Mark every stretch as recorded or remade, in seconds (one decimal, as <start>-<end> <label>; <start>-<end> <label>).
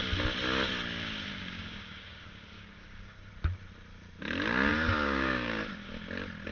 0.0-1.3 recorded; 1.3-3.3 remade; 3.3-4.7 recorded; 4.7-5.9 remade; 5.9-6.5 recorded